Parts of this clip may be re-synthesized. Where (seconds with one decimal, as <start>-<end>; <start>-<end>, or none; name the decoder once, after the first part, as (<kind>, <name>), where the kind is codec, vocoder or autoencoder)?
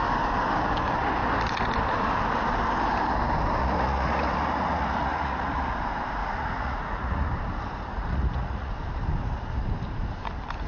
3.6-5.8 (vocoder, Vocos); 6.2-7.3; 7.9-8.7